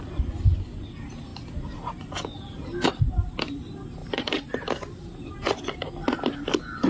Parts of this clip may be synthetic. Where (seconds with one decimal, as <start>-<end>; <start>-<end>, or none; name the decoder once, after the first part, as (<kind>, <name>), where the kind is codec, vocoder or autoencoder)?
4.0-5.3 (vocoder, BigVGAN v2)